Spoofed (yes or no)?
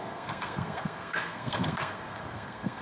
yes